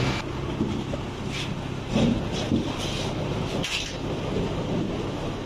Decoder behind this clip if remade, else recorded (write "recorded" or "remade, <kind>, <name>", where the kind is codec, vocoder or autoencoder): recorded